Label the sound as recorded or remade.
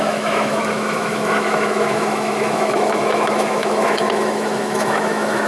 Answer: remade